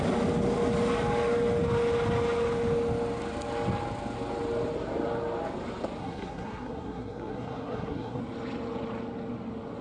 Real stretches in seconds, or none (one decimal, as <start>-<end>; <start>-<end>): 0.0-6.0; 8.2-9.8